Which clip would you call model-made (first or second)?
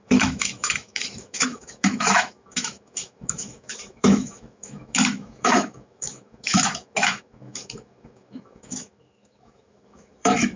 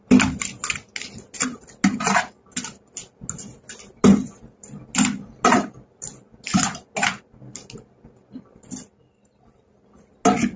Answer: first